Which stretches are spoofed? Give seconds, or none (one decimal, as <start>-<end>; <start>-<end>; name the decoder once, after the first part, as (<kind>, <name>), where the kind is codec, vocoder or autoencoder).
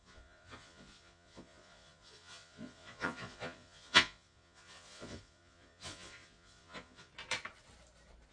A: 0.0-7.1 (vocoder, Vocos)